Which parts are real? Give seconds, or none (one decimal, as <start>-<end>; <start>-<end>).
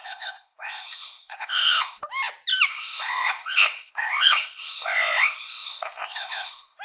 2.0-2.7